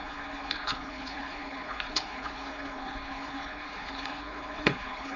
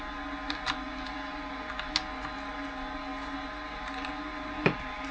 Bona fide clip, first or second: second